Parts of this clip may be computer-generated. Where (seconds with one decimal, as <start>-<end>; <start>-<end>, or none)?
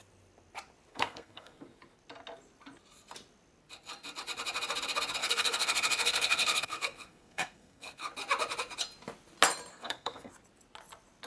0.9-1.6; 5.2-8.1; 9.7-10.3